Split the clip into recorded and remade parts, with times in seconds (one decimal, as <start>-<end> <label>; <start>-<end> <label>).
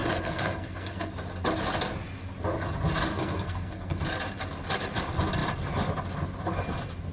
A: 0.0-1.1 remade; 1.1-3.1 recorded; 3.1-4.0 remade; 4.0-7.1 recorded